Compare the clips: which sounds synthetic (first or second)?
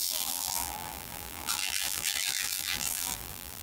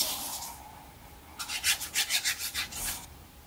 first